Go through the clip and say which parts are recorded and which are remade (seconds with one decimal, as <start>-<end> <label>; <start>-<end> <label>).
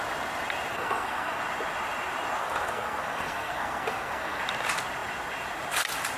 0.0-0.7 recorded; 0.7-1.4 remade; 1.4-2.4 recorded; 2.4-4.4 remade; 4.4-6.2 recorded